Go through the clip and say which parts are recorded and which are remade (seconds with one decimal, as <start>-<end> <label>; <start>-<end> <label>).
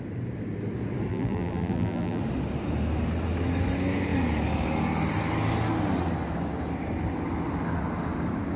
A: 0.0-1.1 recorded; 1.1-2.2 remade; 2.2-8.6 recorded